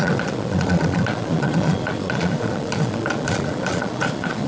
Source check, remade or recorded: remade